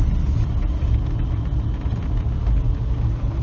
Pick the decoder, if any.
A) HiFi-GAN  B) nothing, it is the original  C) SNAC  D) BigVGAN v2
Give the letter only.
B